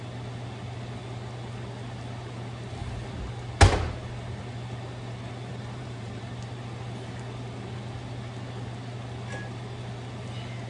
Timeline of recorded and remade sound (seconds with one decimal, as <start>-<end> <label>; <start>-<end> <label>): 0.0-5.5 recorded; 5.5-6.2 remade; 6.2-10.7 recorded

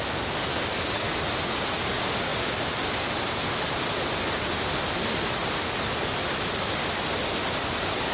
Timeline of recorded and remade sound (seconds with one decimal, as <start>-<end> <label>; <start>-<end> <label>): 0.0-0.5 recorded; 0.5-1.2 remade; 1.2-8.1 recorded

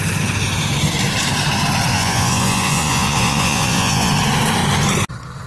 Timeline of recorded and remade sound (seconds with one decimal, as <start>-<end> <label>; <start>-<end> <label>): 0.0-1.9 recorded; 1.9-4.1 remade; 4.1-5.5 recorded